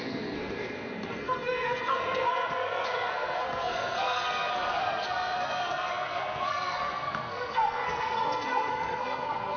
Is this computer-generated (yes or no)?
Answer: yes